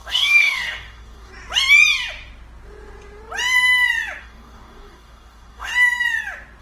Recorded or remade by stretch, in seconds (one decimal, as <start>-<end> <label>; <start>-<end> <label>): 0.0-1.3 remade; 1.3-4.2 recorded; 4.2-5.7 remade; 5.7-6.6 recorded